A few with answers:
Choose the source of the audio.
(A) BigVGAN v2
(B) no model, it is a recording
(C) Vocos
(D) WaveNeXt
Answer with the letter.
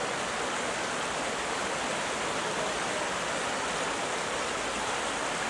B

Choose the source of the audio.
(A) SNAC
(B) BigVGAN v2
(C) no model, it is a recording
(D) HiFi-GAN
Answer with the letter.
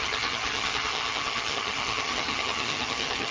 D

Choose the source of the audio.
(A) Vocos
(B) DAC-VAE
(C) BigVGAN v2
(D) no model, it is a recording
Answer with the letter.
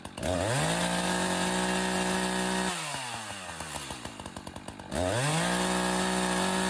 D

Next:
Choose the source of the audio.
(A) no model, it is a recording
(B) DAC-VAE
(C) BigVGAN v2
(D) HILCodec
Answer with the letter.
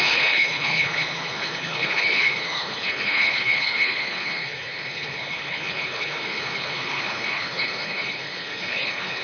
D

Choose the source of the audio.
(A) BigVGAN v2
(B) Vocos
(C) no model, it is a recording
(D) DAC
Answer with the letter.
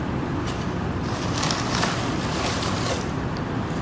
C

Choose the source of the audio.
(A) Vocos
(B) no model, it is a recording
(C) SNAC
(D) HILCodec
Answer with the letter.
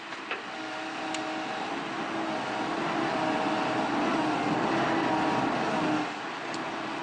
B